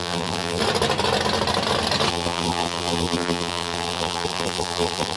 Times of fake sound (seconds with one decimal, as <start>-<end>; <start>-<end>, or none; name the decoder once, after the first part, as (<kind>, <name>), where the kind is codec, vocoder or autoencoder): 0.0-0.6 (vocoder, BigVGAN v2); 2.1-5.2